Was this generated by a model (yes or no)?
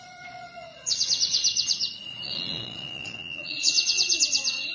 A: yes